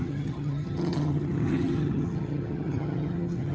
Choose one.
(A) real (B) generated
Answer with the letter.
B